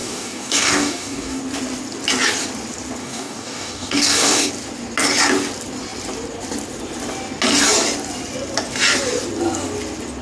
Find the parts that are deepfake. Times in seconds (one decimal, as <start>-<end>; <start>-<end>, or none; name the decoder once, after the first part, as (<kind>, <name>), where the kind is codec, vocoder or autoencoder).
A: 0.0-1.4 (codec, DAC); 3.0-4.5